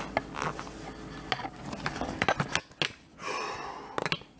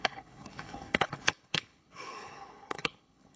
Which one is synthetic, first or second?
second